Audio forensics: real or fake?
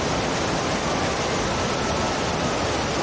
real